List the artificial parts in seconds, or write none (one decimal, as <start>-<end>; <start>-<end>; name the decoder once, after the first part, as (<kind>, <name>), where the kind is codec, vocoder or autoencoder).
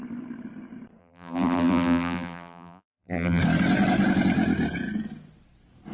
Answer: 1.0-3.4 (vocoder, BigVGAN v2)